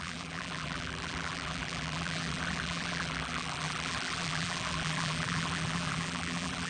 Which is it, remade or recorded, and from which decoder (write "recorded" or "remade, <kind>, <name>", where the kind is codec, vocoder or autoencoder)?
remade, vocoder, BigVGAN v2